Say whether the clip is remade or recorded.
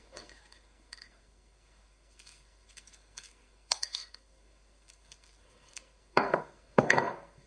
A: remade